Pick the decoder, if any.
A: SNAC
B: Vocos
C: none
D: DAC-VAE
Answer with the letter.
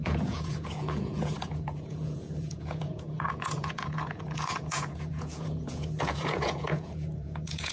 B